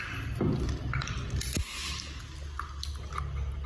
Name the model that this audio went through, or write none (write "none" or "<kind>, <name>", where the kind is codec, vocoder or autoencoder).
none